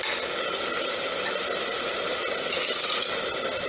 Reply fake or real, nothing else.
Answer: real